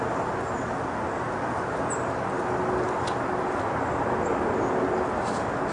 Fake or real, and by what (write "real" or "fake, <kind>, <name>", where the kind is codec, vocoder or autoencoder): real